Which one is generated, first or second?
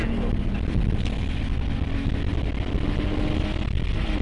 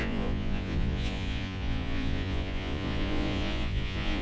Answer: second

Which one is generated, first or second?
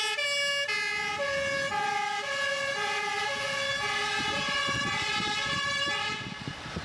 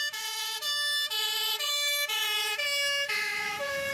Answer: second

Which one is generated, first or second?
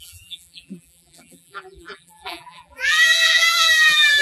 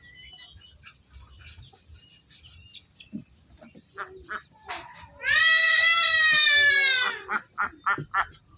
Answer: first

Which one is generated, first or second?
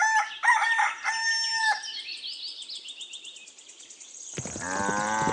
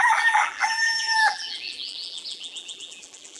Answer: second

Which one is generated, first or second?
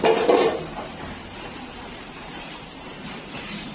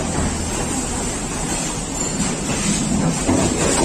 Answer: first